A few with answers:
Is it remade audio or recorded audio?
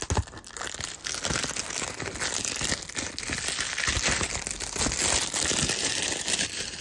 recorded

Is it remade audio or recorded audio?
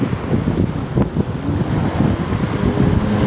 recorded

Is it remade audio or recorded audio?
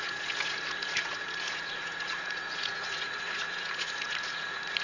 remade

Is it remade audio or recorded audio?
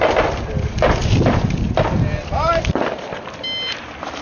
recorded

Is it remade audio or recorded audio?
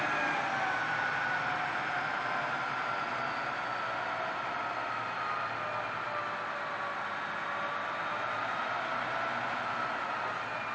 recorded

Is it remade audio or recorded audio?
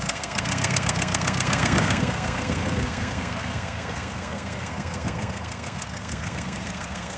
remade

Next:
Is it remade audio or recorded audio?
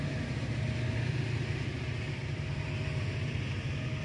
remade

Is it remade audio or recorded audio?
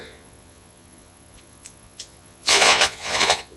remade